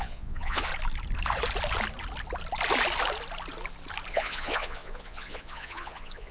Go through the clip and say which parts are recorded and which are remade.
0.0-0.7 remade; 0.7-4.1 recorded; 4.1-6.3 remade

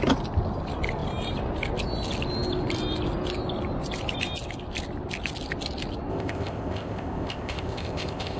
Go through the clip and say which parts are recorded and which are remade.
0.0-6.1 recorded; 6.1-8.4 remade

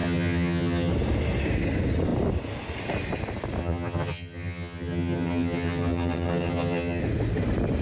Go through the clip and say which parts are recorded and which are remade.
0.0-0.9 remade; 0.9-3.6 recorded; 3.6-7.0 remade; 7.0-7.8 recorded

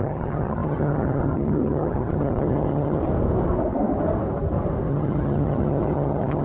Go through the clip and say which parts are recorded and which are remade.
0.0-3.0 remade; 3.0-4.9 recorded; 4.9-6.4 remade

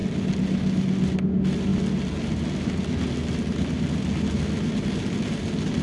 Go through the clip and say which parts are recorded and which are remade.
0.0-5.8 recorded